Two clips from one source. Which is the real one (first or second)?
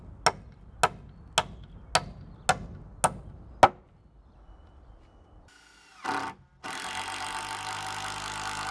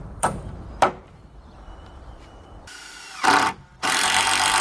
first